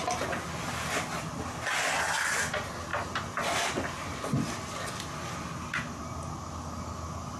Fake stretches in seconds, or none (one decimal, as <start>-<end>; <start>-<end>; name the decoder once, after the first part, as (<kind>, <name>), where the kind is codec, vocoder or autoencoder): none